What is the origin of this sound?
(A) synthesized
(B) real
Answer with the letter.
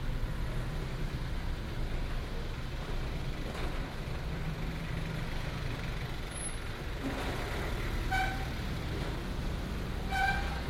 B